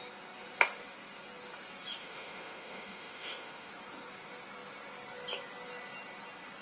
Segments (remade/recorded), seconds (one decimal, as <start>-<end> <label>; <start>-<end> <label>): 0.0-2.0 recorded; 2.0-3.7 remade; 3.7-6.6 recorded